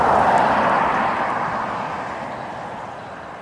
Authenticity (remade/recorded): recorded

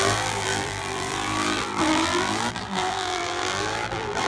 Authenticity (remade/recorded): remade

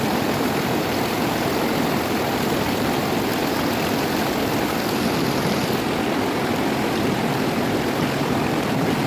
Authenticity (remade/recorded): remade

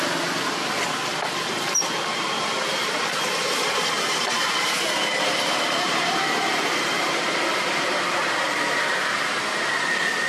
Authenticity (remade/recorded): remade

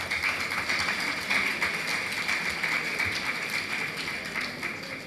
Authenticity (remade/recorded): recorded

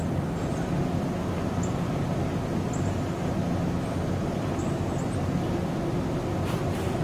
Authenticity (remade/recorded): recorded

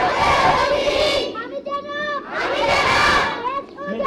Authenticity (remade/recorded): remade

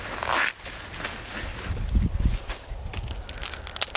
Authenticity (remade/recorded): recorded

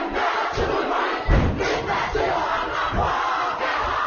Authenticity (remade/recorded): remade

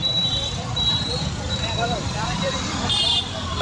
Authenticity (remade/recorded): remade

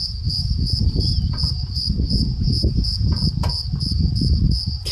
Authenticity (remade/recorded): remade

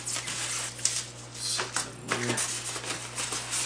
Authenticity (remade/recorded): recorded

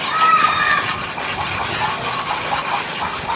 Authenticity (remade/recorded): recorded